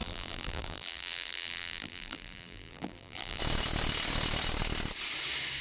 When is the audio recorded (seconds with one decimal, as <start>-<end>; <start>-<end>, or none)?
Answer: 3.4-5.6